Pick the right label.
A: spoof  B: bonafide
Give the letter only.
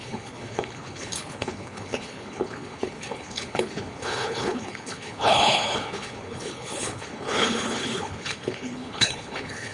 A